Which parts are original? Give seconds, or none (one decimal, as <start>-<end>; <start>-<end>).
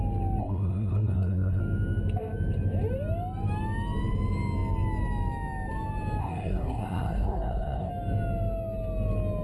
0.0-0.4; 1.6-6.2; 7.9-9.4